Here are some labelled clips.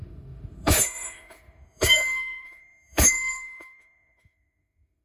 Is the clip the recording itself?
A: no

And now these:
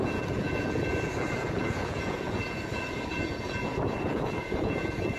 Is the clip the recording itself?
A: no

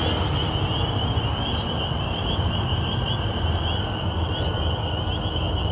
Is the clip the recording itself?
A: yes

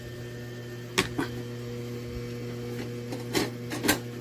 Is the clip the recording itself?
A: yes